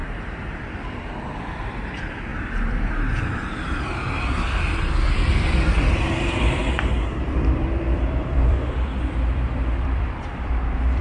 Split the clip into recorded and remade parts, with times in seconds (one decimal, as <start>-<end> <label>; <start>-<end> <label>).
0.0-6.6 remade; 6.6-7.2 recorded; 7.2-11.0 remade